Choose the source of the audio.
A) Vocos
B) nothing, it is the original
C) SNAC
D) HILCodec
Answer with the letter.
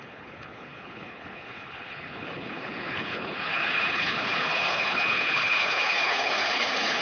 D